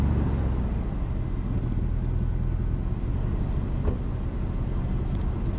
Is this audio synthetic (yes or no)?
no